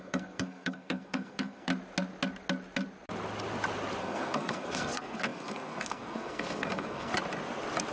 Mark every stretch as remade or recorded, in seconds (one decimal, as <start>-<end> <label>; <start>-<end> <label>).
0.0-1.7 remade; 1.7-4.0 recorded; 4.0-7.1 remade; 7.1-7.9 recorded